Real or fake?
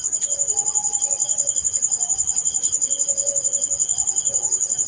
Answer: real